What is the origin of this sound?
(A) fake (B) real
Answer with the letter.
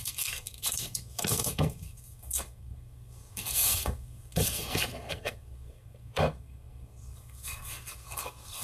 A